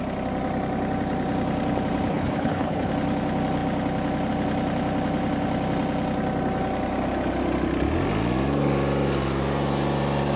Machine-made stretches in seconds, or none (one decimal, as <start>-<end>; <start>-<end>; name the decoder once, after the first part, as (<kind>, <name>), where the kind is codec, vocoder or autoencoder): 2.1-2.9 (codec, HILCodec)

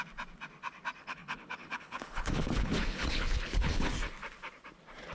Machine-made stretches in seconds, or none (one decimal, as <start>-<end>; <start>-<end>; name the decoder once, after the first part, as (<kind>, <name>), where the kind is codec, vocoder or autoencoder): 1.0-3.9 (codec, HILCodec)

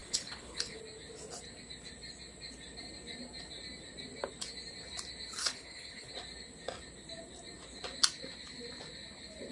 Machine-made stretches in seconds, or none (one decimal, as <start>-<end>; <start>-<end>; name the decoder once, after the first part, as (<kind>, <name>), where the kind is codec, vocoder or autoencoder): 0.0-0.8 (codec, HILCodec); 5.4-6.1

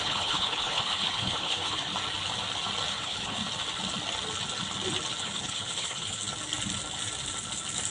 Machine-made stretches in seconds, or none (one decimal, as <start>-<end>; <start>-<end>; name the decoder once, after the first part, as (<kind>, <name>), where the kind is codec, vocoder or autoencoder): 0.0-1.9 (codec, HILCodec); 2.9-3.4; 5.2-6.2

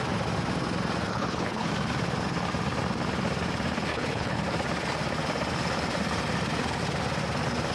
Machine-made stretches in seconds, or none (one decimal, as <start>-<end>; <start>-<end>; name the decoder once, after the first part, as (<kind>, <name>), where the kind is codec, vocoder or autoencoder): 1.1-1.7 (codec, HILCodec); 3.9-4.4